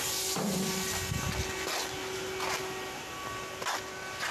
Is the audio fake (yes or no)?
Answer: no